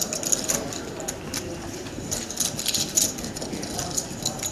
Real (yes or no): no